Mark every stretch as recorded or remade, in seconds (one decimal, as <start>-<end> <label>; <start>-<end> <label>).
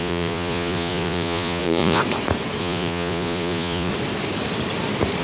0.0-2.0 remade; 2.0-2.6 recorded; 2.6-3.9 remade; 3.9-5.2 recorded